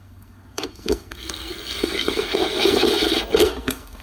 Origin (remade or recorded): remade